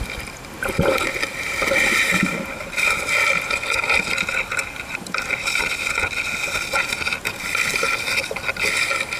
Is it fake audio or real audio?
real